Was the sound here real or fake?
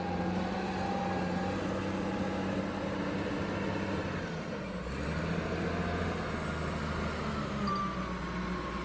real